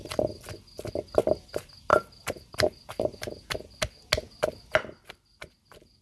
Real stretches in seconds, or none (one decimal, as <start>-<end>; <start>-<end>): 0.0-1.9; 3.3-6.0